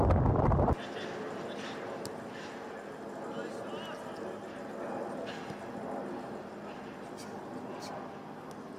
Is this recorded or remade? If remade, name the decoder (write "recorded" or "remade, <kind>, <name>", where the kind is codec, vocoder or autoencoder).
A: recorded